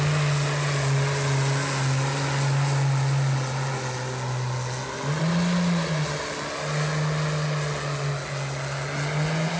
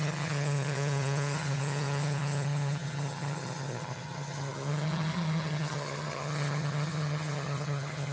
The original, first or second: first